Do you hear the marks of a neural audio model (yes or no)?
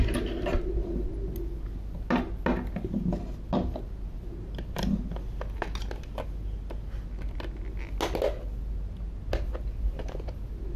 no